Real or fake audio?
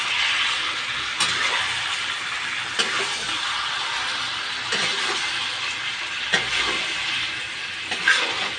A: fake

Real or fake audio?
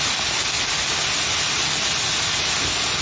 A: real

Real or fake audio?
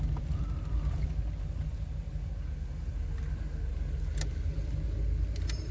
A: real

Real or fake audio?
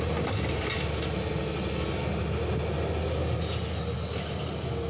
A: real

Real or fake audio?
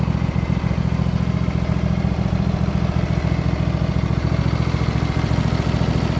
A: real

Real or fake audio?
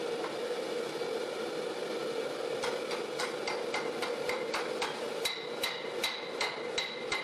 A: real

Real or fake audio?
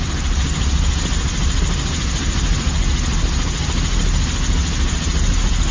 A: real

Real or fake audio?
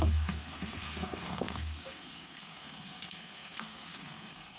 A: fake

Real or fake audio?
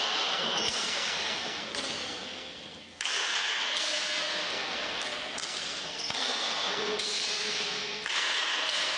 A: fake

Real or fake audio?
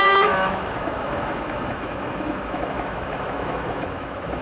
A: fake